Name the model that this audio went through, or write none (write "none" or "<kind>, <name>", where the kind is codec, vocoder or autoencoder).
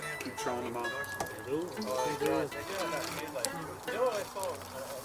none